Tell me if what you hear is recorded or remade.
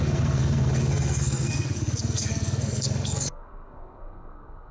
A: remade